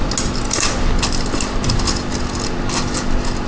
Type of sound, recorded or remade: recorded